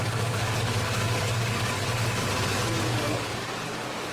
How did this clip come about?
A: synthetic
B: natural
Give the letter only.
A